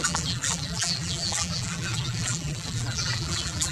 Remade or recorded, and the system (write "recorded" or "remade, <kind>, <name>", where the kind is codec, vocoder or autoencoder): remade, vocoder, BigVGAN v2